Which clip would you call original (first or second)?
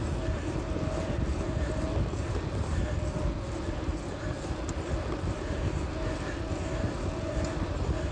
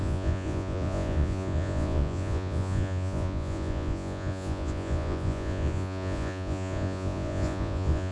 first